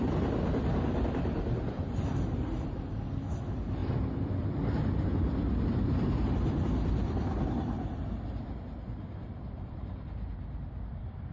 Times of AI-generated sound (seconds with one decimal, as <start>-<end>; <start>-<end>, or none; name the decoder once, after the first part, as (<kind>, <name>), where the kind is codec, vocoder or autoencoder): none